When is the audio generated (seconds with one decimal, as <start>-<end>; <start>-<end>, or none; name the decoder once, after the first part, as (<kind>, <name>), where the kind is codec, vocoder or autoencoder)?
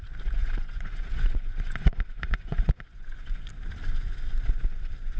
0.4-3.5 (vocoder, Vocos)